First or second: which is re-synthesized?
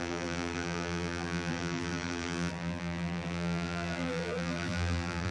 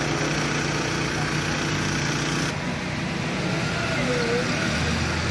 first